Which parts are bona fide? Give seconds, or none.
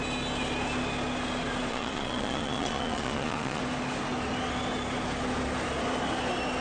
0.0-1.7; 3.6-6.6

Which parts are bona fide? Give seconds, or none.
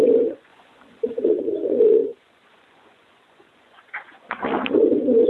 none